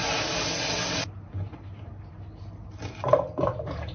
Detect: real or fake real